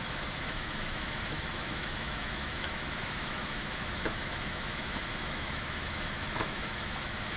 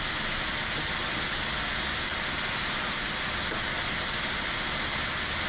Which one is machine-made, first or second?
first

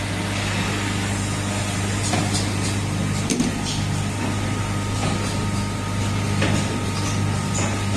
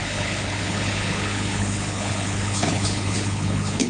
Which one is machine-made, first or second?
second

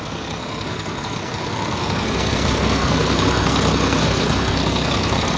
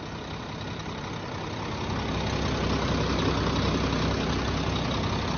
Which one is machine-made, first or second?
first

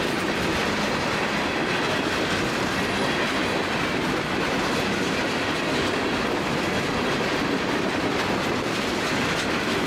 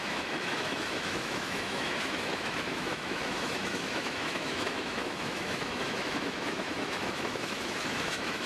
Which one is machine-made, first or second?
second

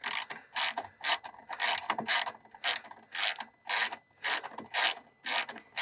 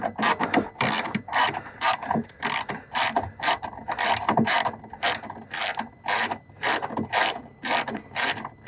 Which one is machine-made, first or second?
second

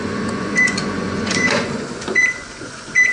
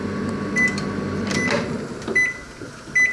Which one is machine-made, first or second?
first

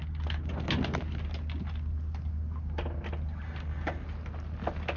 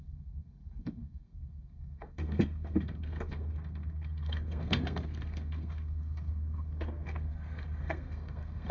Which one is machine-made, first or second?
second